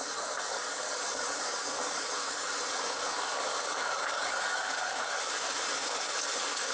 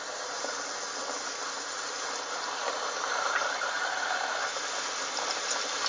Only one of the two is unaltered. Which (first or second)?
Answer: second